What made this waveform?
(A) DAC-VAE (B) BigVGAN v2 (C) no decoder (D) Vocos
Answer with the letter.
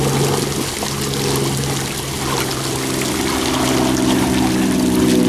C